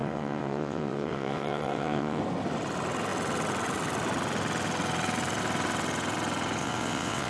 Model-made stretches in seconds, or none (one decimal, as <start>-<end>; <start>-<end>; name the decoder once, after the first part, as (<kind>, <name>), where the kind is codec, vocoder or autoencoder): 0.0-2.2 (vocoder, WaveNeXt); 6.6-7.3